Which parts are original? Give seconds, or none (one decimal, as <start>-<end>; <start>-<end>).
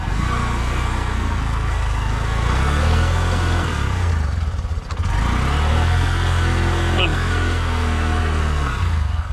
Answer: 4.1-5.7